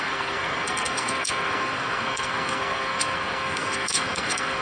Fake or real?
fake